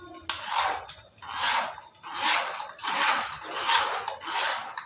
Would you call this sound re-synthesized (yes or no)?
no